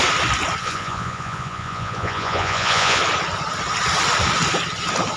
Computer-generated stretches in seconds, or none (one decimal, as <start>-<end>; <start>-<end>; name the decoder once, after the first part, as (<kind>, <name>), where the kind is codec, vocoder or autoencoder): 0.6-3.0 (vocoder, Vocos)